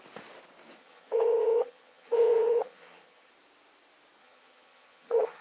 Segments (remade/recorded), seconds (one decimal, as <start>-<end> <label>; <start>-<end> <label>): 0.0-0.8 recorded; 0.8-3.3 remade; 3.3-4.2 recorded; 4.2-5.4 remade